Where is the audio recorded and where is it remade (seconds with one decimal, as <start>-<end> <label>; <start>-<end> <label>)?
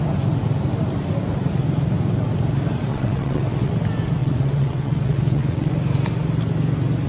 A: 0.0-2.9 recorded; 2.9-3.7 remade; 3.7-4.2 recorded; 4.2-5.7 remade; 5.7-7.1 recorded